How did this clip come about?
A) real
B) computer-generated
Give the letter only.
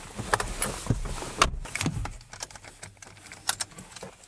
A